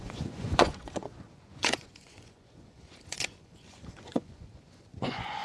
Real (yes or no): no